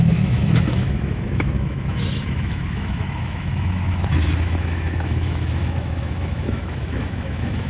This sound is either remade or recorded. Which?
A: remade